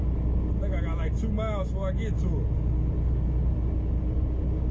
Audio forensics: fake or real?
real